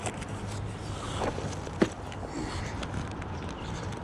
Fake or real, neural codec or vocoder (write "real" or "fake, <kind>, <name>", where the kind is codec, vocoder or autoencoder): real